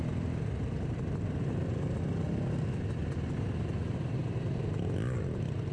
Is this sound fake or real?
real